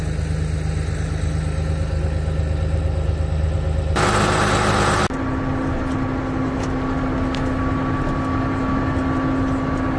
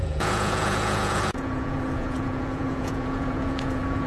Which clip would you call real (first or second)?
first